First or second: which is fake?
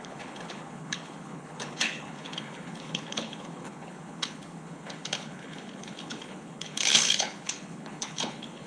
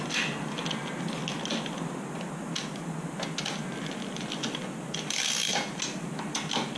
first